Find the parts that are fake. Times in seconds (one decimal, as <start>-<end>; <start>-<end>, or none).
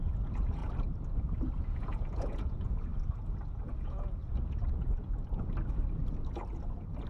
0.0-0.6; 1.6-2.9; 3.5-4.2